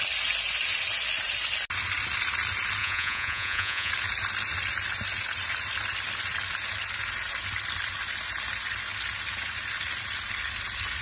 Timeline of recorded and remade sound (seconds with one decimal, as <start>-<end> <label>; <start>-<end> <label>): 0.0-2.8 recorded; 2.8-3.9 remade; 3.9-11.0 recorded